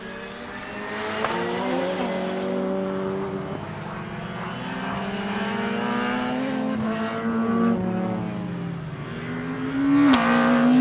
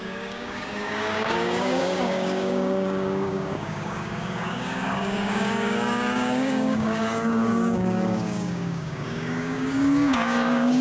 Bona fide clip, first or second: first